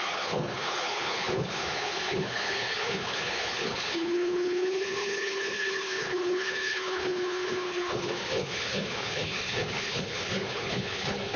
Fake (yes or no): yes